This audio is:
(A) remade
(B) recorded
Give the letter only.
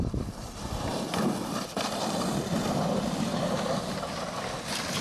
B